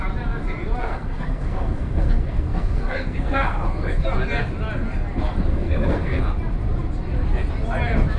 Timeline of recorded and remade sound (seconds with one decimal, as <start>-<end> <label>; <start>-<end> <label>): 0.0-0.8 recorded; 0.8-4.1 remade; 4.1-5.5 recorded; 5.5-6.2 remade; 6.2-8.2 recorded